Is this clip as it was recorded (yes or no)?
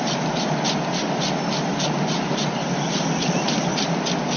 yes